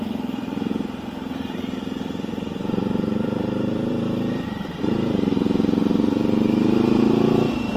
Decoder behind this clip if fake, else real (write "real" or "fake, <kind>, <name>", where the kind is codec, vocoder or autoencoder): fake, vocoder, BigVGAN v2